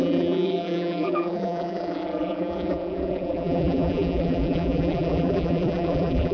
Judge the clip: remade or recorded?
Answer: remade